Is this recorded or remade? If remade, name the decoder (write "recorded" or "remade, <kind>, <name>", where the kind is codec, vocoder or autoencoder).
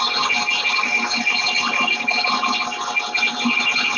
recorded